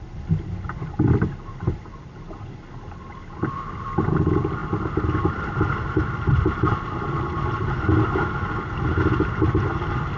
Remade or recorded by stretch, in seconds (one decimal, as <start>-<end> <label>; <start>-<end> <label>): 0.0-10.2 recorded